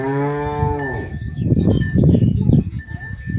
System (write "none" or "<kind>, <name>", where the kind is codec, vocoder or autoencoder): codec, DAC